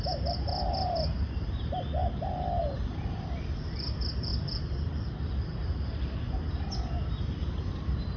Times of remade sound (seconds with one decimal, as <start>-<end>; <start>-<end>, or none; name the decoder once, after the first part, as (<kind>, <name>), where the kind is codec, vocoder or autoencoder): 0.0-0.5 (vocoder, BigVGAN v2); 1.1-2.0; 2.6-4.3; 7.1-8.2

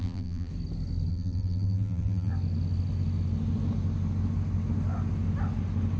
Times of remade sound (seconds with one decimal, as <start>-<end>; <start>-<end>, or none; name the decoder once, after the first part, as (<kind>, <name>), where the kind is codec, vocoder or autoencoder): 0.0-0.5 (vocoder, BigVGAN v2); 1.1-2.3